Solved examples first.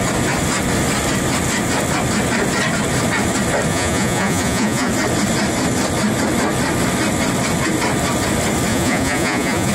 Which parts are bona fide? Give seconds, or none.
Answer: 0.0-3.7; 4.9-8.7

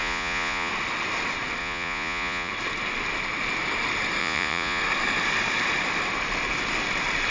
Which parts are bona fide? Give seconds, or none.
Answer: 0.7-1.6; 2.5-4.2; 4.8-7.3

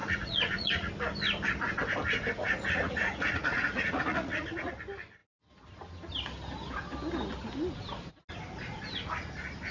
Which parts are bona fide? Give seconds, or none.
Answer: 0.9-2.4; 4.7-9.7

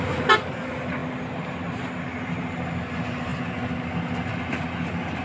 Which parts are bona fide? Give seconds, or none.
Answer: 0.0-5.2

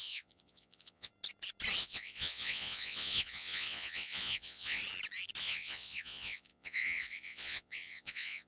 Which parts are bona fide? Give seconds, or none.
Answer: 1.1-1.8; 4.8-5.4